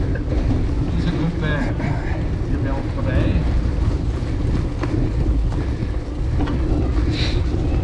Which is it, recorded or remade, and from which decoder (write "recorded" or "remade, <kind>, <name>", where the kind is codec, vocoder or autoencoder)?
recorded